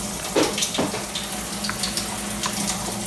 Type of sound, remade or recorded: recorded